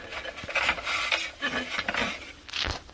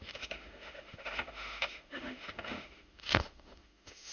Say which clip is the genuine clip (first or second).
first